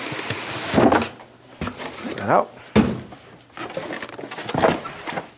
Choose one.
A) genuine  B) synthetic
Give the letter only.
A